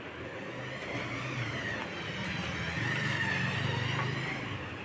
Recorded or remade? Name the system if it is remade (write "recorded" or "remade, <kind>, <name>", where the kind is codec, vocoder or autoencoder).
recorded